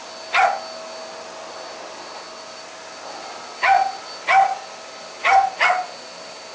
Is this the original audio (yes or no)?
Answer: yes